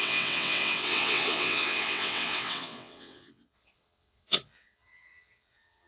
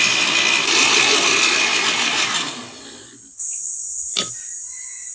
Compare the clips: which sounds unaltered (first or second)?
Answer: second